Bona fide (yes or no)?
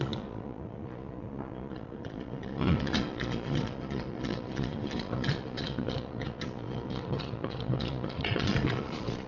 no